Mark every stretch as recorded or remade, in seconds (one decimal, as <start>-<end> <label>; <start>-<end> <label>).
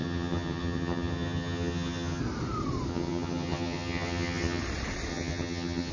0.0-2.2 remade; 2.2-2.9 recorded; 2.9-4.6 remade; 4.6-5.1 recorded; 5.1-5.9 remade